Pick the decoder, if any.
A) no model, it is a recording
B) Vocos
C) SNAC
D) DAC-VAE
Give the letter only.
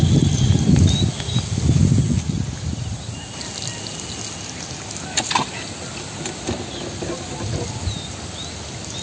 A